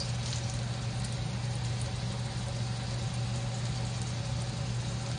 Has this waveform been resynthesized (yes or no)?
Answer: no